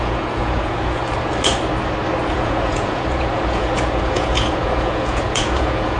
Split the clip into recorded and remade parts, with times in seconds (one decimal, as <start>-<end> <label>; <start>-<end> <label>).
0.0-1.0 remade; 1.0-2.3 recorded; 2.3-6.0 remade

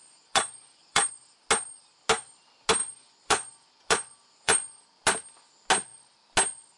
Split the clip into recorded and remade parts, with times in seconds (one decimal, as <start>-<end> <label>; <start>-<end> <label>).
0.0-1.1 remade; 1.1-2.8 recorded; 2.8-4.8 remade; 4.8-6.8 recorded

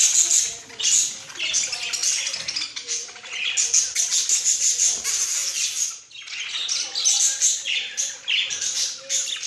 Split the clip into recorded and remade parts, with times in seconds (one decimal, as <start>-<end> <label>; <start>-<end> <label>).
0.0-9.5 recorded